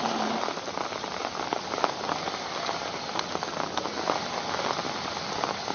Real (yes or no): yes